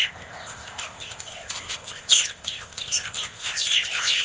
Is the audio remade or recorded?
remade